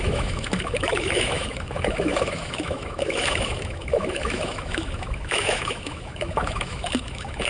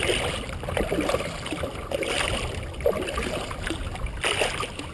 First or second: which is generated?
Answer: first